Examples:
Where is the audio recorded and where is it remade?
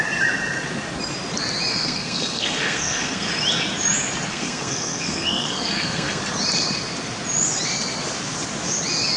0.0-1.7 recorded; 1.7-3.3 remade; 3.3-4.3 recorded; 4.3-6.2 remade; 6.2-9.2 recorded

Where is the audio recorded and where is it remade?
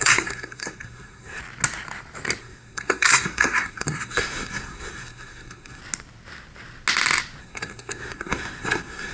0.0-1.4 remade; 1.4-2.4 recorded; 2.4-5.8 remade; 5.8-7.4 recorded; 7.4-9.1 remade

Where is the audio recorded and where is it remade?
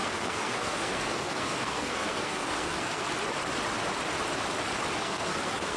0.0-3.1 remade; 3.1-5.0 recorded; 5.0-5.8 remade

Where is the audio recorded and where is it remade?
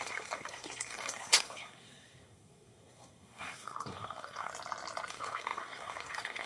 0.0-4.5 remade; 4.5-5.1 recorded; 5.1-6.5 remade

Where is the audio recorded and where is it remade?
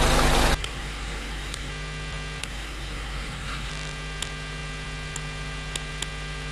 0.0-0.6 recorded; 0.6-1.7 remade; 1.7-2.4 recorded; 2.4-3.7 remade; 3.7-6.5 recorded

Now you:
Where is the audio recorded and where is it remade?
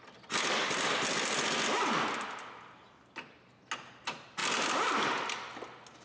0.0-6.0 recorded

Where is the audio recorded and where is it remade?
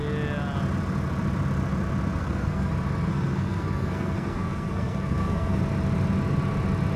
0.0-2.2 recorded; 2.2-2.7 remade; 2.7-3.1 recorded; 3.1-5.6 remade; 5.6-7.0 recorded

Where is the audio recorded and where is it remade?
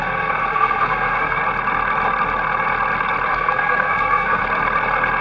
0.0-1.4 remade; 1.4-3.3 recorded; 3.3-4.4 remade; 4.4-5.2 recorded